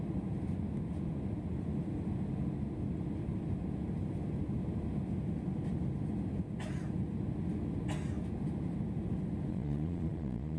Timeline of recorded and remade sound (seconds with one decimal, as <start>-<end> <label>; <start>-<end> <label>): 0.0-9.5 recorded; 9.5-10.6 remade